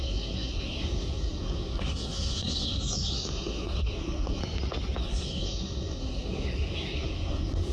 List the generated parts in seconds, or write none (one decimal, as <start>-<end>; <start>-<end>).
0.0-4.4; 5.0-7.7